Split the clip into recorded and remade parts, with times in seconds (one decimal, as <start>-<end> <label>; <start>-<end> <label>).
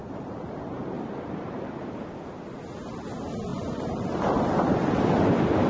0.0-2.0 remade; 2.0-3.5 recorded; 3.5-4.5 remade; 4.5-5.7 recorded